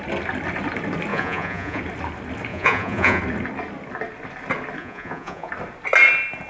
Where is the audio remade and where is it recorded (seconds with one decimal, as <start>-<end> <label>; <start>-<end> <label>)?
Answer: 0.0-1.1 recorded; 1.1-1.8 remade; 1.8-2.5 recorded; 2.5-3.2 remade; 3.2-4.8 recorded; 4.8-5.5 remade; 5.5-6.5 recorded